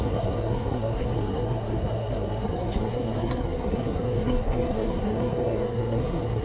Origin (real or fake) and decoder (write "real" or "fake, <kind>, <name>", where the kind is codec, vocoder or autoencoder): fake, codec, SNAC